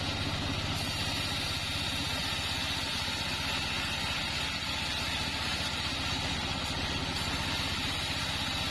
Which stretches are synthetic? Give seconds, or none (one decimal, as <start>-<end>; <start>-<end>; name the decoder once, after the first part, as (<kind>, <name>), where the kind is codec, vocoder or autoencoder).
none

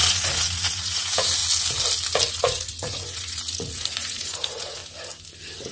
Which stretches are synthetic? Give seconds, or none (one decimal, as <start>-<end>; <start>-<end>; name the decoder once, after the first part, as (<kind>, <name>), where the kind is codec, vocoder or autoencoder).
0.0-1.4 (vocoder, Vocos); 2.3-4.8

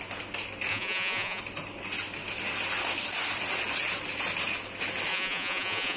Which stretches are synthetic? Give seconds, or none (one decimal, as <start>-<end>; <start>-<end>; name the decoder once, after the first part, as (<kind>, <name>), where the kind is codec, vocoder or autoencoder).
0.7-1.4 (vocoder, Vocos); 5.1-6.0

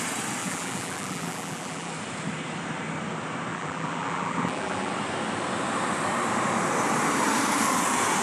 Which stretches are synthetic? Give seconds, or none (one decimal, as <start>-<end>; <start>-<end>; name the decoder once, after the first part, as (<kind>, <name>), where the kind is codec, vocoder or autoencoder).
0.4-1.9 (vocoder, BigVGAN v2); 3.5-4.9